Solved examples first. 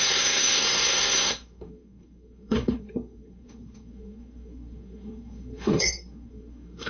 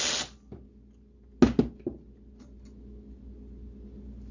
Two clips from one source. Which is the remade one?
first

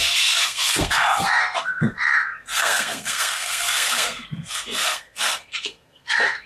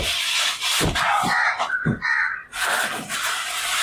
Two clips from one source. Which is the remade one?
first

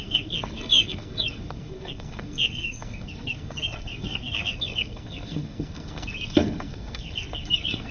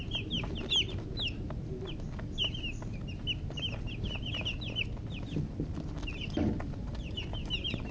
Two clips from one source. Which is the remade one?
first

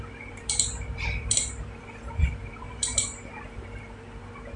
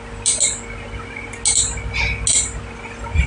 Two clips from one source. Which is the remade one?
first